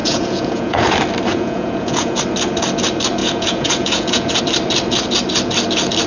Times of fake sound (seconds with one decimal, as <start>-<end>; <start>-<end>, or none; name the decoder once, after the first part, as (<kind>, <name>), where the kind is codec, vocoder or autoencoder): 0.0-0.9 (vocoder, Vocos); 1.3-2.2; 3.2-4.4